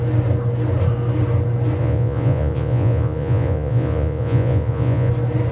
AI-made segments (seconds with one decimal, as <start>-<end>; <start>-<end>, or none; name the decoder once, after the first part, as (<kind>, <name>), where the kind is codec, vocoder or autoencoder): 1.8-5.1 (vocoder, Vocos)